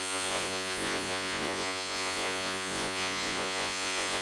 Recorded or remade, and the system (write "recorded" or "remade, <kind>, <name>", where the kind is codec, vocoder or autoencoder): remade, vocoder, Vocos